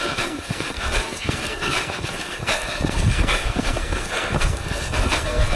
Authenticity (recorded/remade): remade